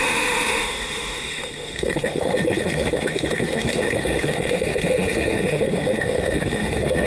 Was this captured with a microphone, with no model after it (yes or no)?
no